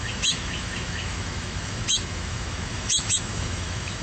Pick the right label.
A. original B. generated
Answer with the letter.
B